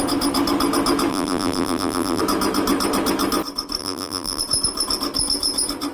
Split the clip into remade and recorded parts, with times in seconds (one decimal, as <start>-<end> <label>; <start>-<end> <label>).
0.0-1.1 recorded; 1.1-2.2 remade; 2.2-3.8 recorded; 3.8-4.4 remade; 4.4-5.9 recorded